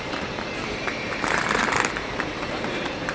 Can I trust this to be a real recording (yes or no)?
no